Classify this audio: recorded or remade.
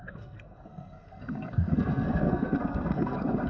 remade